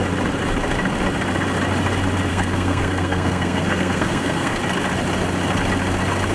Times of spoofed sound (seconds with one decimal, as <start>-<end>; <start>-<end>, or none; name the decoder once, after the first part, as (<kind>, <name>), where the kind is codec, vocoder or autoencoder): 2.3-4.6 (codec, SNAC)